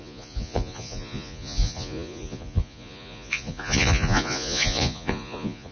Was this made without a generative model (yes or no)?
no